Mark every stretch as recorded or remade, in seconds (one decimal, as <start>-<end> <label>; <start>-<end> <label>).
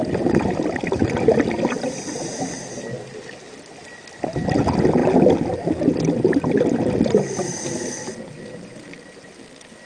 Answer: 0.0-9.9 recorded